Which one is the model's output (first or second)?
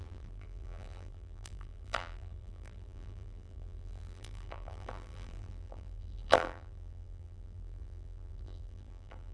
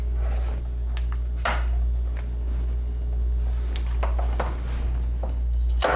first